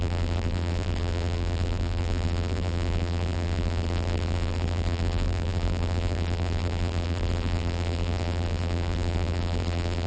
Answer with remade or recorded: remade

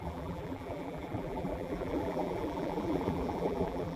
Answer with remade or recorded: remade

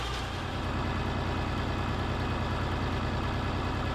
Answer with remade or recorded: recorded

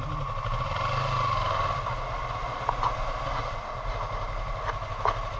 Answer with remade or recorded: recorded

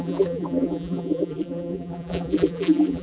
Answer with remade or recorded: remade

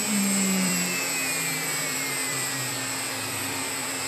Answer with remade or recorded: remade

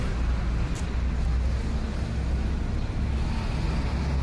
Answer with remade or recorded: recorded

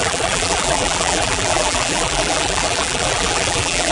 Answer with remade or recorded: remade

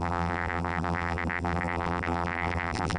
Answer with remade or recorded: remade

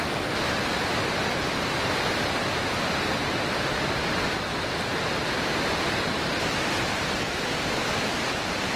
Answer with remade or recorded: remade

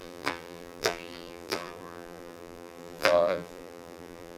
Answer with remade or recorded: remade